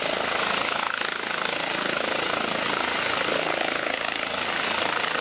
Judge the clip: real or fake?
real